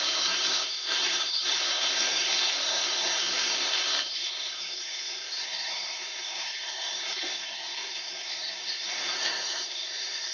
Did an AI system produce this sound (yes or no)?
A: yes